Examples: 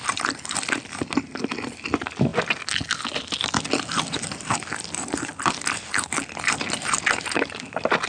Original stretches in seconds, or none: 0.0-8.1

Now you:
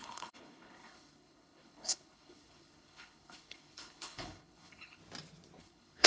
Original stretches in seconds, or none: 5.0-5.6